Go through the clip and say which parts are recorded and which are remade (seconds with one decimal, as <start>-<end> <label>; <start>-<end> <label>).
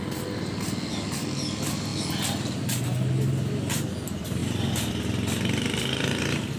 0.0-6.6 recorded